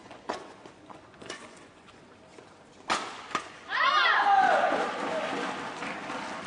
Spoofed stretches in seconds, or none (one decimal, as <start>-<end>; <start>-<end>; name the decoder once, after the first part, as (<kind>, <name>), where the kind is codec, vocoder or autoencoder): 0.0-2.0 (vocoder, Vocos); 2.9-3.9